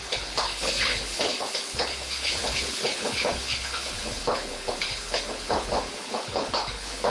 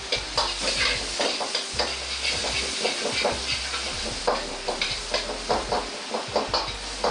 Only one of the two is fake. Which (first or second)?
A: first